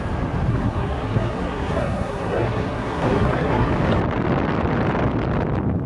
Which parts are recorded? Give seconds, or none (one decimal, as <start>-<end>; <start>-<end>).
0.0-0.5; 3.7-5.9